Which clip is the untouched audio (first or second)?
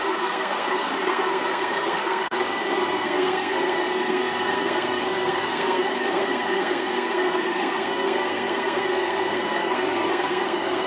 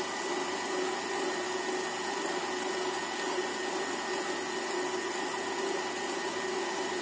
second